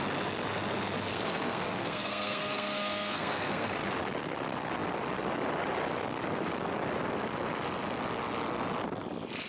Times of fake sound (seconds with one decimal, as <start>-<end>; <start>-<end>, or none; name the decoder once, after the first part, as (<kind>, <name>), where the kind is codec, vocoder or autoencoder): 1.1-3.9 (codec, SNAC)